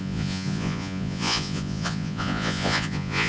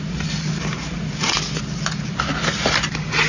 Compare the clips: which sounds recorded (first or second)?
second